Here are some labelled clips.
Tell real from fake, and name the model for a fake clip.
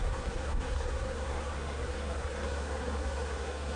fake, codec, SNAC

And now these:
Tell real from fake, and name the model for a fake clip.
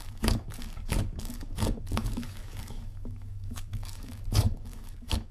fake, codec, DAC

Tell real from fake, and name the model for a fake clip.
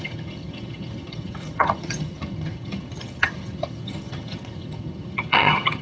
fake, vocoder, HiFi-GAN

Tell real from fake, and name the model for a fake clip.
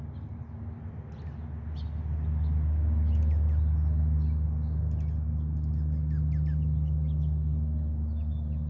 real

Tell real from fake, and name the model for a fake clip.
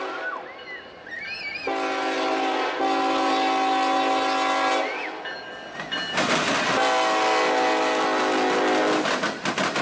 real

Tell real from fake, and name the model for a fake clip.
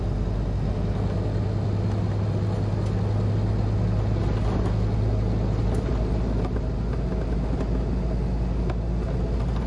real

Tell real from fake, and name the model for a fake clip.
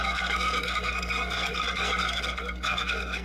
fake, codec, SNAC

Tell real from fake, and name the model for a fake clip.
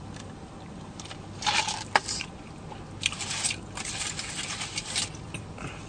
fake, vocoder, BigVGAN v2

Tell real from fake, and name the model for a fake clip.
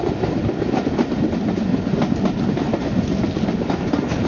real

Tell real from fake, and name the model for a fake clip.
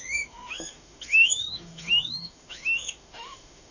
fake, autoencoder, DAC-VAE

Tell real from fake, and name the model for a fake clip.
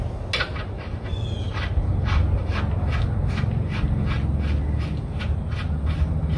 real